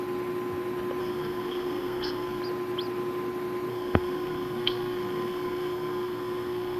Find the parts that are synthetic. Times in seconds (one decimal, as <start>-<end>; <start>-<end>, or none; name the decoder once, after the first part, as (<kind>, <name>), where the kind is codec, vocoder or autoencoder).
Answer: 1.0-2.4 (codec, SNAC); 3.7-6.8